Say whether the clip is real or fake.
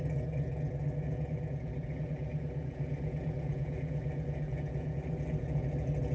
fake